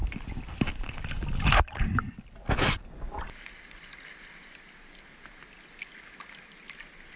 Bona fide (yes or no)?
yes